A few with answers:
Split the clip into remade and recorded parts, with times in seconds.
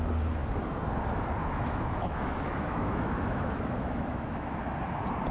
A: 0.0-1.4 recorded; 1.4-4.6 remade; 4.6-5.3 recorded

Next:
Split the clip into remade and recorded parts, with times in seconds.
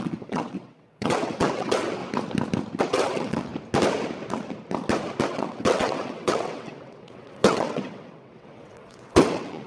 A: 0.0-2.0 remade; 2.0-2.8 recorded; 2.8-3.5 remade; 3.5-5.3 recorded; 5.3-9.7 remade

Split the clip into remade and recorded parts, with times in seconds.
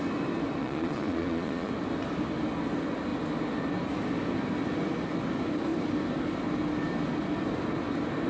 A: 0.0-0.6 recorded; 0.6-1.7 remade; 1.7-8.3 recorded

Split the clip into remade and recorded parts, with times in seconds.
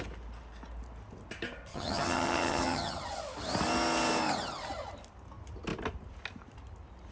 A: 0.0-1.7 recorded; 1.7-3.0 remade; 3.0-7.1 recorded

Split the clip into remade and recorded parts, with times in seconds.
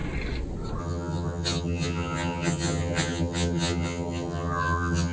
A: 0.0-0.8 recorded; 0.8-5.1 remade